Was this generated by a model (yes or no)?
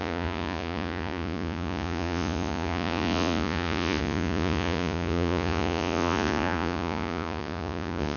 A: yes